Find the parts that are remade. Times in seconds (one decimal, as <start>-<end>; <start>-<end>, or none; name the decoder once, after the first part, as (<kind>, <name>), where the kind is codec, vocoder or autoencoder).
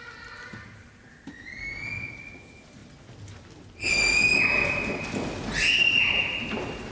none